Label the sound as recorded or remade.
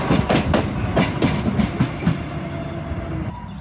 recorded